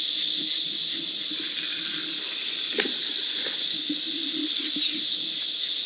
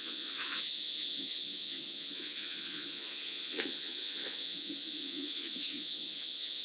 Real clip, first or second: first